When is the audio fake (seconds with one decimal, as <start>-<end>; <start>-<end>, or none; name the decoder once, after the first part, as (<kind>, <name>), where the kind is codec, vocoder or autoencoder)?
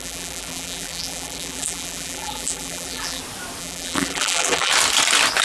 0.0-3.2 (vocoder, BigVGAN v2); 3.6-4.7